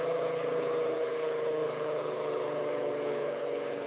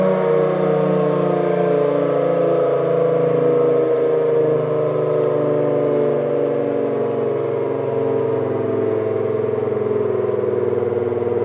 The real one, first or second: second